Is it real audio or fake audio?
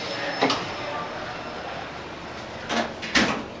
real